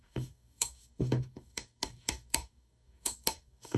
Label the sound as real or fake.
fake